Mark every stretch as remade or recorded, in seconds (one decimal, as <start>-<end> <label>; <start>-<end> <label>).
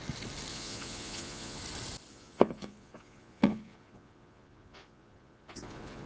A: 0.0-0.5 recorded; 0.5-1.6 remade; 1.6-2.1 recorded; 2.1-6.1 remade